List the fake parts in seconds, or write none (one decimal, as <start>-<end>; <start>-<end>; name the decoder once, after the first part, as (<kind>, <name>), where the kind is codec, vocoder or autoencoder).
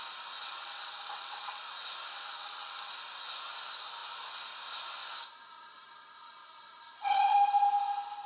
0.4-1.6 (vocoder, WaveNeXt); 2.1-2.9